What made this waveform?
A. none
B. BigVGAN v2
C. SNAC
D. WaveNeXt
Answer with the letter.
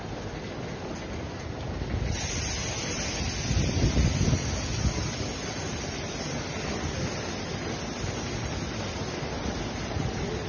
A